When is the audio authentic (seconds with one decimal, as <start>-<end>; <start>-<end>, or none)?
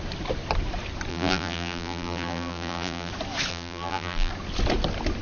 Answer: 0.0-1.1; 3.1-3.5; 4.3-5.2